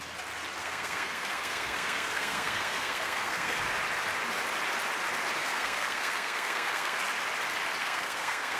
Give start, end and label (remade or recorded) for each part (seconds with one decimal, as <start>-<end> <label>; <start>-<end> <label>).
0.0-0.6 recorded; 0.6-3.6 remade; 3.6-5.4 recorded; 5.4-7.0 remade; 7.0-7.8 recorded; 7.8-8.6 remade